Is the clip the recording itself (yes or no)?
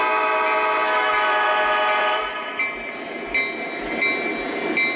yes